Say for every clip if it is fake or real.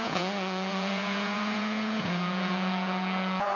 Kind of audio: fake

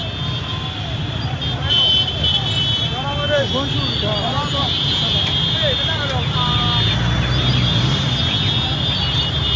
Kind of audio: real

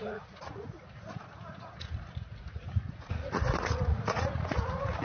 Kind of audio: fake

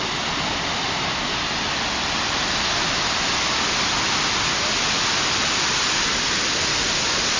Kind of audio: real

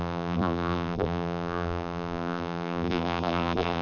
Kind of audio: fake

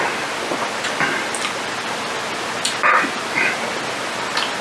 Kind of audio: real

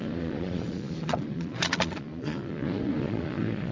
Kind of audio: fake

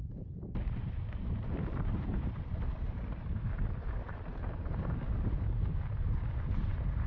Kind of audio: fake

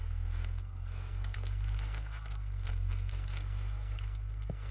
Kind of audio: fake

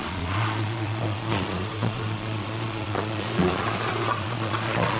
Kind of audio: fake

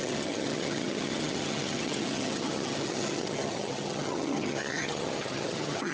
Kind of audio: fake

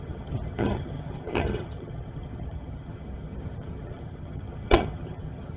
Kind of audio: fake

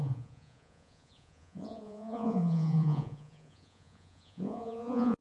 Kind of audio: fake